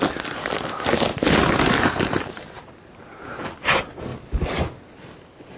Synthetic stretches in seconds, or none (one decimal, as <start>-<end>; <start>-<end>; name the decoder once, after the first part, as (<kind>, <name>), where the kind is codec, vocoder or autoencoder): 1.1-3.3 (vocoder, BigVGAN v2); 4.1-4.6